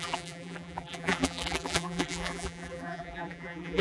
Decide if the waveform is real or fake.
fake